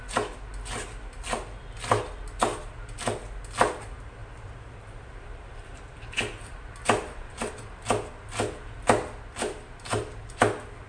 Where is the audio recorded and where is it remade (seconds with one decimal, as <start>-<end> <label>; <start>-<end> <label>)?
0.0-4.2 recorded; 4.2-7.5 remade; 7.5-10.9 recorded